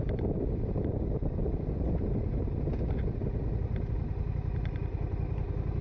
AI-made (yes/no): no